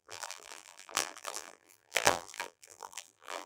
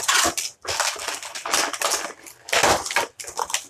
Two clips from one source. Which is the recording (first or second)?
second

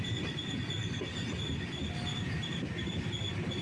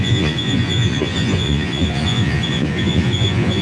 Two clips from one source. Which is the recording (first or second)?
first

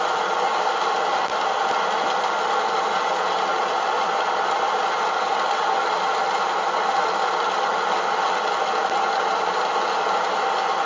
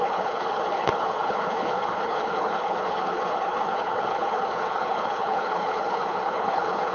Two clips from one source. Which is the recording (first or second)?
first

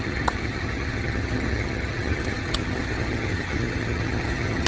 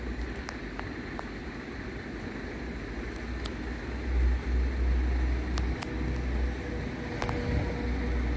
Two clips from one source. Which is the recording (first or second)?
second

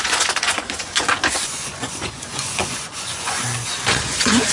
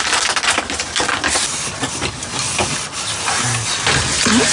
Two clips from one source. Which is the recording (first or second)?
second